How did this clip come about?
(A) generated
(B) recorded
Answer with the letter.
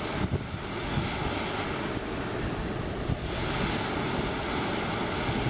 B